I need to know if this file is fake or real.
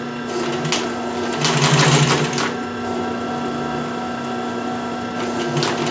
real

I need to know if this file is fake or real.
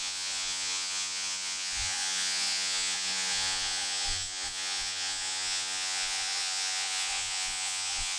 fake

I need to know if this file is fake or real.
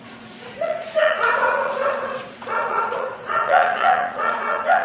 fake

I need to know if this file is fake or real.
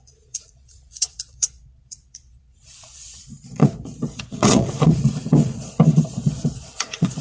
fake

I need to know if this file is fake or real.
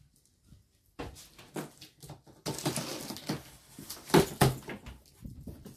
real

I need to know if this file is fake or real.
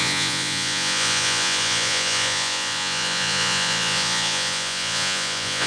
fake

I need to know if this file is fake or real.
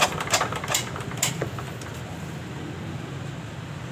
real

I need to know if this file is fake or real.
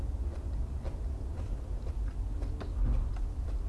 real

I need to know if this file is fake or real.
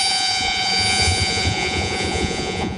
fake